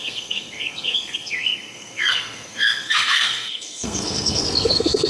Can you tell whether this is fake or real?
fake